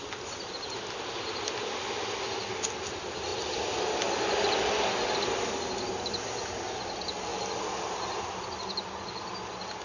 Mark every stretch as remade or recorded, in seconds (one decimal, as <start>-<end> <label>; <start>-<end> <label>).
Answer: 0.0-9.8 recorded